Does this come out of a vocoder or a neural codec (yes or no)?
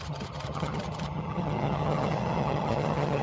yes